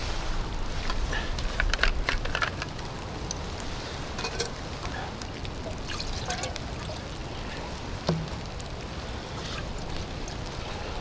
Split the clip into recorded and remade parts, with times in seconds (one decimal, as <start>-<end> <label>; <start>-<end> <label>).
0.0-1.0 remade; 1.0-7.2 recorded; 7.2-10.3 remade; 10.3-11.0 recorded